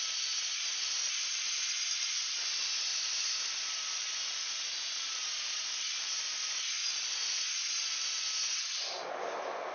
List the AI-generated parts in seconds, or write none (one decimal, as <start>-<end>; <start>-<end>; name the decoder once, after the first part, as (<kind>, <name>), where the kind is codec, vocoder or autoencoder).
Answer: 0.0-9.7 (vocoder, BigVGAN v2)